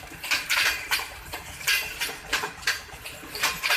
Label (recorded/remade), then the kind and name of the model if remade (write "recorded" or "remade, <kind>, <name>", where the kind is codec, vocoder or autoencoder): remade, vocoder, BigVGAN v2